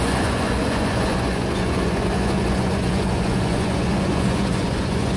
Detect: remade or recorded remade